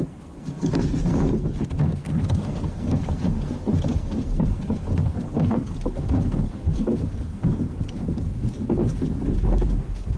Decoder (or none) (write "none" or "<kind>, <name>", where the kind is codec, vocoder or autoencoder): codec, SNAC